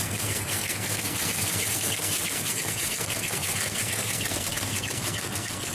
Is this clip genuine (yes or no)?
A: no